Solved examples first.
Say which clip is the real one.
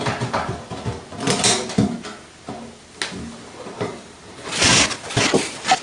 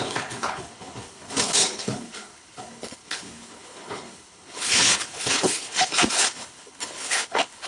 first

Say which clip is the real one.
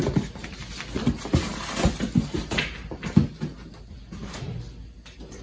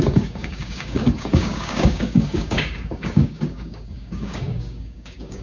first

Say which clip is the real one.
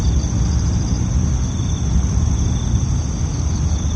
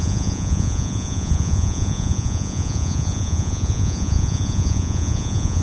first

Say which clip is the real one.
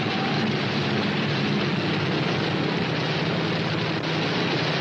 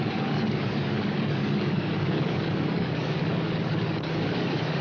first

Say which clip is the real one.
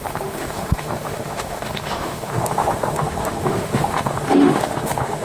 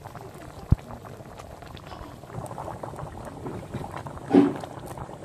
second